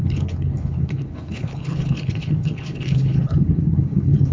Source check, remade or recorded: remade